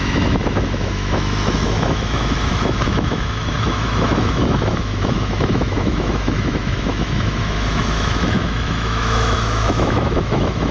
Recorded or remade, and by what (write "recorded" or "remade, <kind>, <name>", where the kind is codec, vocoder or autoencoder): remade, autoencoder, DAC-VAE